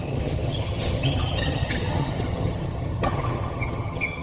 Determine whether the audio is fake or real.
fake